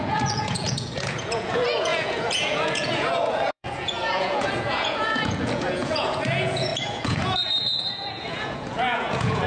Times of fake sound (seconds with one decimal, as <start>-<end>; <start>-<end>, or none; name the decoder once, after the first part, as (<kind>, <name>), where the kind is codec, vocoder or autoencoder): 0.0-9.5 (vocoder, Vocos)